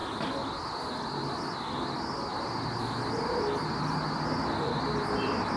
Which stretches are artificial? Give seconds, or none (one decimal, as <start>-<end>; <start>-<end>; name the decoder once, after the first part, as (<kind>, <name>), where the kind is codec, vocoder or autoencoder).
none

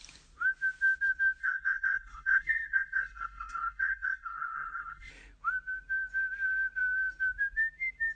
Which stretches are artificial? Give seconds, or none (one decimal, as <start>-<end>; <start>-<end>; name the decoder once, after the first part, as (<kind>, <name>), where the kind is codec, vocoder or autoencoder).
1.4-5.1 (codec, SNAC)

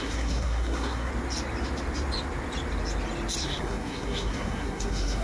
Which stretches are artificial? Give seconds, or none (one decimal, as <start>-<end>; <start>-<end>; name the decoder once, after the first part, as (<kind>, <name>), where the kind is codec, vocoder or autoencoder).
0.0-1.1 (codec, SNAC); 3.4-5.2

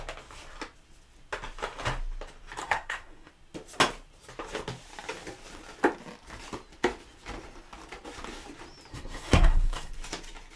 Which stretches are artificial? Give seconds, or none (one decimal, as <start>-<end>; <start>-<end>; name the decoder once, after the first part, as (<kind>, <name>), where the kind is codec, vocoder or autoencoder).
2.6-3.3 (codec, SNAC); 8.9-9.9

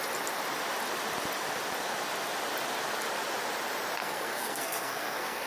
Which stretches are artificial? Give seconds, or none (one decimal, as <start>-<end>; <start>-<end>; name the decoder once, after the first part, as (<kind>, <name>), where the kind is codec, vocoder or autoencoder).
4.0-5.5 (codec, SNAC)

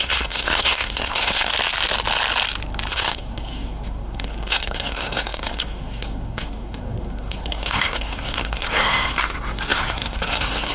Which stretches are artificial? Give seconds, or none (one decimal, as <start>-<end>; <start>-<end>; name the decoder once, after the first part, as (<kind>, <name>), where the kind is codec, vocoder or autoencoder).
0.0-1.5 (codec, SNAC); 2.9-10.7